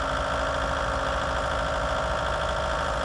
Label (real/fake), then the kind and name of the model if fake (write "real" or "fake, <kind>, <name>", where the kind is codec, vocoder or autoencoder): real